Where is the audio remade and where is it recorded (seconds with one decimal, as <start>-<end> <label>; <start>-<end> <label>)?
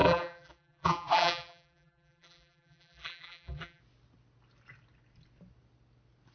0.0-3.8 remade; 3.8-6.3 recorded